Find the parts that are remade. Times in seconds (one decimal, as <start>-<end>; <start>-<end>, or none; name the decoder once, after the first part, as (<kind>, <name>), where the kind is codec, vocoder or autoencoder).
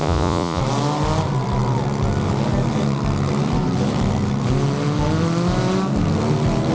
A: 0.0-0.6 (vocoder, Vocos)